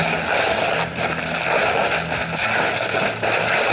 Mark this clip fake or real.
real